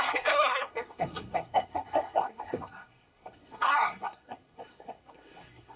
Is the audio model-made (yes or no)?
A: yes